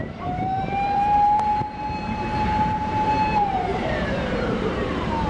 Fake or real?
fake